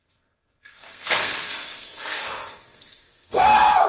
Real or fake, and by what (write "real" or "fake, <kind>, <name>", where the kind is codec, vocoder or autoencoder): fake, codec, SNAC